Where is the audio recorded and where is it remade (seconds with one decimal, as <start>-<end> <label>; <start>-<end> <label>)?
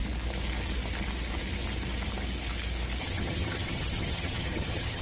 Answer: 0.0-3.0 recorded; 3.0-5.0 remade